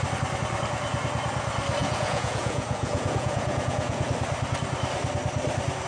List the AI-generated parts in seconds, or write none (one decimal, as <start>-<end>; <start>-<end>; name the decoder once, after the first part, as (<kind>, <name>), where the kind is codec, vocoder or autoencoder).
1.8-4.1 (vocoder, Vocos)